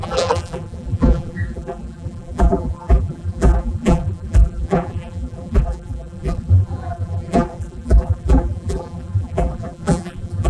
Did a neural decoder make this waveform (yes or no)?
yes